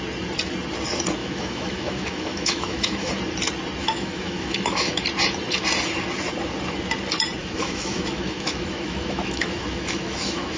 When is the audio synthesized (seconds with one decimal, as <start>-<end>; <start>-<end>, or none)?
1.2-3.1; 3.8-5.0; 7.4-10.6